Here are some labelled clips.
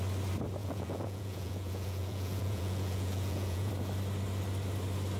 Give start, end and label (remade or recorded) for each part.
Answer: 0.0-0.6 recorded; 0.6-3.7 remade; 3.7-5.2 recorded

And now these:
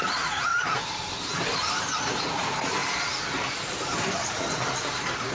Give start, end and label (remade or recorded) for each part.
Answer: 0.0-0.5 remade; 0.5-2.1 recorded; 2.1-2.8 remade; 2.8-5.3 recorded

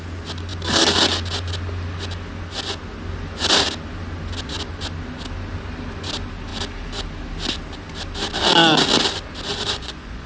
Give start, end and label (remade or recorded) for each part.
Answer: 0.0-9.5 recorded; 9.5-10.3 remade

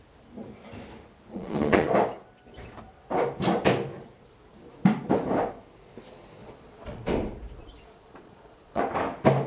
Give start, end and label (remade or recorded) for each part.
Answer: 0.0-1.3 recorded; 1.3-1.9 remade; 1.9-6.4 recorded; 6.4-7.0 remade; 7.0-7.6 recorded; 7.6-8.8 remade; 8.8-9.5 recorded